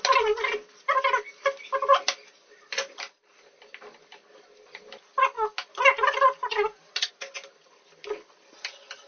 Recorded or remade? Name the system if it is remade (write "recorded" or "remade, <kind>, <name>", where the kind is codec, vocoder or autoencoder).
recorded